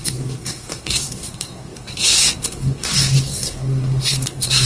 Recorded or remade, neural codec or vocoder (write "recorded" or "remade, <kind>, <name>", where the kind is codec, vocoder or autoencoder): remade, codec, SNAC